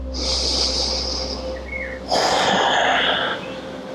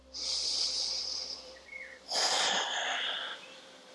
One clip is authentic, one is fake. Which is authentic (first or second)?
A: first